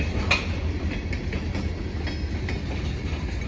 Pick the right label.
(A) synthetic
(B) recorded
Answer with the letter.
B